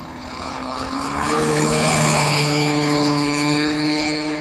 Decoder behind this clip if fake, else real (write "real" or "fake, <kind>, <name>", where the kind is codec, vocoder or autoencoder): fake, codec, HILCodec